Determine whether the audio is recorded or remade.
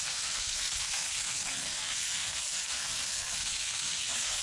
remade